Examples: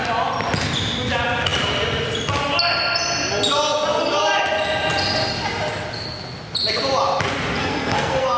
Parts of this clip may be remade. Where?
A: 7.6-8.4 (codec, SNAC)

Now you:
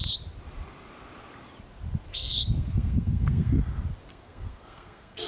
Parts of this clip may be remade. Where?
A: 2.1-3.6 (codec, SNAC); 4.1-5.3

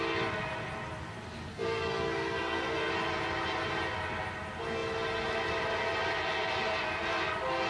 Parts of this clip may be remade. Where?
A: 1.5-2.9 (codec, SNAC)

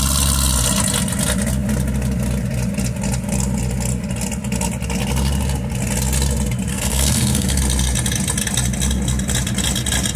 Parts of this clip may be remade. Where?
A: 6.7-7.6 (codec, SNAC)

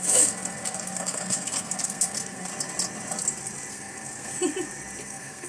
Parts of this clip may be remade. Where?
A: 0.0-2.5 (codec, SNAC); 3.7-4.3; 5.0-5.5

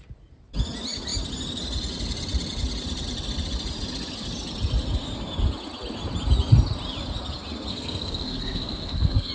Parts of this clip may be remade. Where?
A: 7.7-9.3 (codec, SNAC)